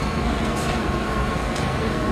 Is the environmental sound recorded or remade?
remade